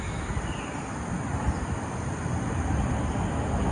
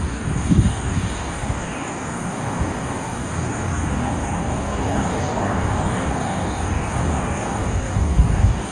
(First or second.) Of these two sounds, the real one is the first